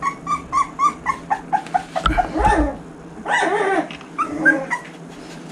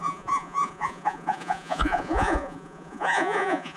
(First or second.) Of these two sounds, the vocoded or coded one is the second